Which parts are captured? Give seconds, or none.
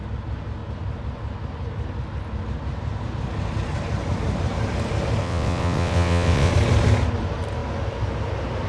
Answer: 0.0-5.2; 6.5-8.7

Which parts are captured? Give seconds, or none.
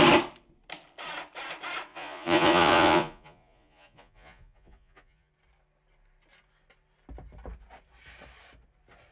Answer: 0.0-1.9; 5.3-9.1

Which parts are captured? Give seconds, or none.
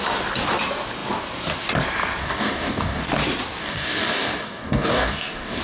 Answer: 0.0-2.2; 3.0-3.6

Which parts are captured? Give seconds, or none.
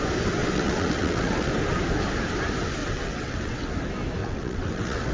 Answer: 0.0-0.4; 1.5-2.8; 3.7-4.2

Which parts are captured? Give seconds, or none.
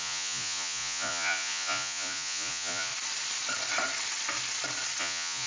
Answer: 2.9-5.0